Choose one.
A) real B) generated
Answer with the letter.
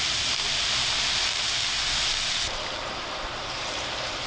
B